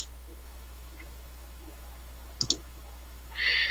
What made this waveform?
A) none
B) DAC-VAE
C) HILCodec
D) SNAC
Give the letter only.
B